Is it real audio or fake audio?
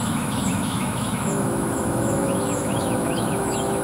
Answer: fake